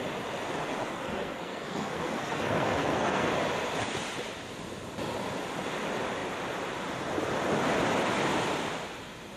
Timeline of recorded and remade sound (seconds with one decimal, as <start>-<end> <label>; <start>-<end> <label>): 0.0-0.6 recorded; 0.6-3.3 remade; 3.3-9.4 recorded